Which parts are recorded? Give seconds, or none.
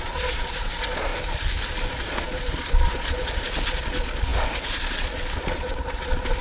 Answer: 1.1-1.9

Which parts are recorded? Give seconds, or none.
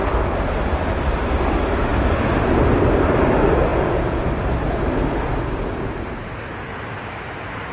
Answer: 0.0-3.7; 4.3-7.7